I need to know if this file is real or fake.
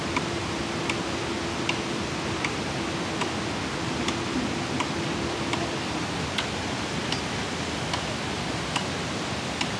real